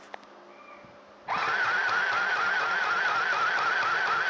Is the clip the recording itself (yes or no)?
yes